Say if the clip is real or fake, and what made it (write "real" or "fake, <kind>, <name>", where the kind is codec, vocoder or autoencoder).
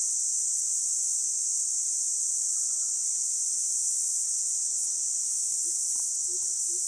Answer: real